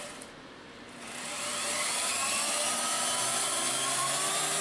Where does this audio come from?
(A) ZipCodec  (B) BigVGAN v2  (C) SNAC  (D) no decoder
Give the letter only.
B